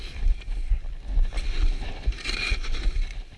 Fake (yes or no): no